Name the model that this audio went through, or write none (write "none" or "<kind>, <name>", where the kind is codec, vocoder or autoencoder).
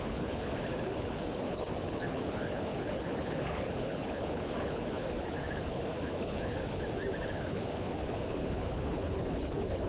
codec, HILCodec